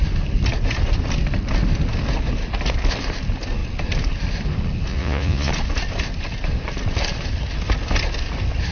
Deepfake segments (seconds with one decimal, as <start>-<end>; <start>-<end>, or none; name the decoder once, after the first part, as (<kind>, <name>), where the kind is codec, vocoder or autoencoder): 4.9-5.5 (vocoder, Vocos)